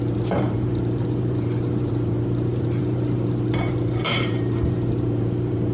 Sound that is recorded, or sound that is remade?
remade